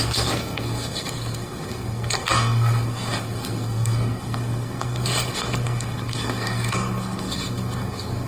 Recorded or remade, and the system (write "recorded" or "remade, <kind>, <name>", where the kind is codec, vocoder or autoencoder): remade, codec, SNAC